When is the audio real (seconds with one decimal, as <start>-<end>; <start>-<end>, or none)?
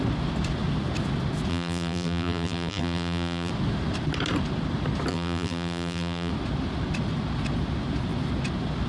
0.0-1.5; 3.5-5.1; 6.3-8.9